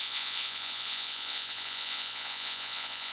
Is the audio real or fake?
fake